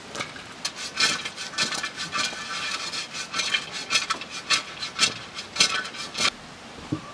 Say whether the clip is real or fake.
real